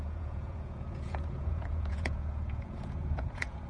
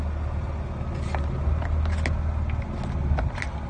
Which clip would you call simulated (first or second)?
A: first